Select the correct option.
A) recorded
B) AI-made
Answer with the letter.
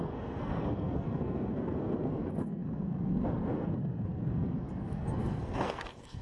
B